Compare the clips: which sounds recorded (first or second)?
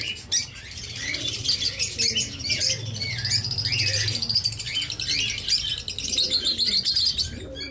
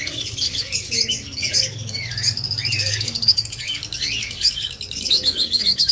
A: first